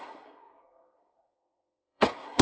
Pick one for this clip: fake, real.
fake